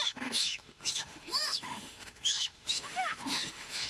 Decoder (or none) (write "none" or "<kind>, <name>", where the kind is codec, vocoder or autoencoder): autoencoder, DAC-VAE